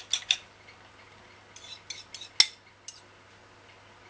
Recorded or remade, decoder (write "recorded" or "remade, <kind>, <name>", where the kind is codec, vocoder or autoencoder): recorded